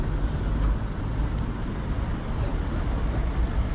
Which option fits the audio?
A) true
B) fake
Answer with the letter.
A